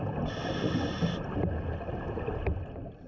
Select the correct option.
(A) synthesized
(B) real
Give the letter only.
B